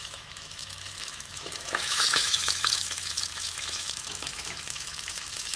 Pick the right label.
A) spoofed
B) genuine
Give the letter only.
A